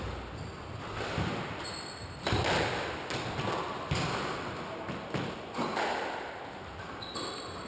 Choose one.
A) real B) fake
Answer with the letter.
A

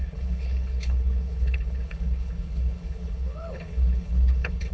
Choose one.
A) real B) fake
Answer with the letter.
B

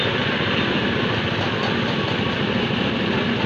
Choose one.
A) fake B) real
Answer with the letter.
B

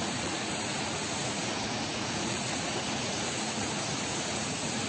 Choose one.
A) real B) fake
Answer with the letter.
B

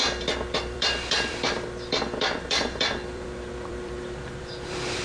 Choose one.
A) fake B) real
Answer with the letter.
A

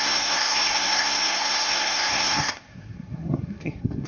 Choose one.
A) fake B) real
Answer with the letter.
A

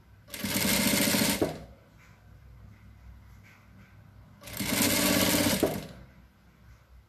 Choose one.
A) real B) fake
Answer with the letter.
A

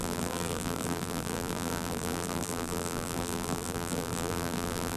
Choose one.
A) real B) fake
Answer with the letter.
B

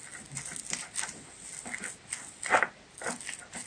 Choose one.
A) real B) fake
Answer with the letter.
A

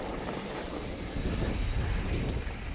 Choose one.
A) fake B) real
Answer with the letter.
A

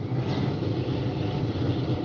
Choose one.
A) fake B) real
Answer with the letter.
B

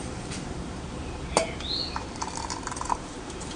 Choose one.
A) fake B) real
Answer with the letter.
A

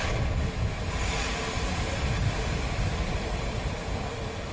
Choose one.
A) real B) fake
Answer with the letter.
A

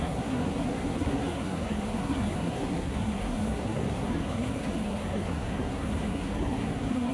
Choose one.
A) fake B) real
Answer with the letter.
A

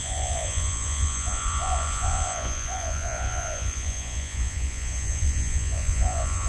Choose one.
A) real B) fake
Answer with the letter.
B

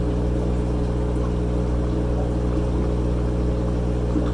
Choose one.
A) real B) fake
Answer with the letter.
A